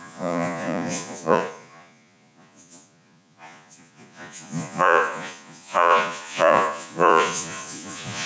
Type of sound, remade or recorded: remade